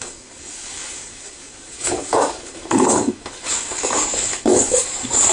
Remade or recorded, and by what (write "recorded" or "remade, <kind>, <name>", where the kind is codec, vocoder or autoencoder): remade, codec, DAC